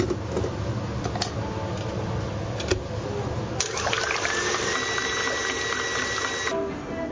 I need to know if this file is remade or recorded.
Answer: recorded